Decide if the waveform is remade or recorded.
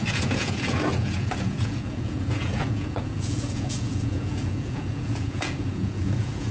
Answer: remade